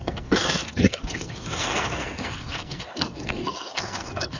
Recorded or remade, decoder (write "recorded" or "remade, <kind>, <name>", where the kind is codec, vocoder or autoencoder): remade, codec, SNAC